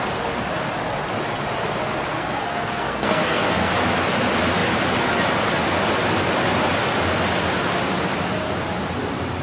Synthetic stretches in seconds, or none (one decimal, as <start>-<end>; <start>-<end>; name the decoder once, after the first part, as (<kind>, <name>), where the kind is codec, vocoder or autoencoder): 2.1-3.7 (codec, SNAC)

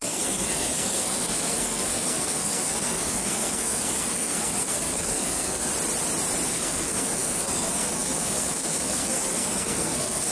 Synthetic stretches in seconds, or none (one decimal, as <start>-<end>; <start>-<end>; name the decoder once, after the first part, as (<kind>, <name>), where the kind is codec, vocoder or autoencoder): 0.0-5.7 (codec, SNAC); 6.5-10.3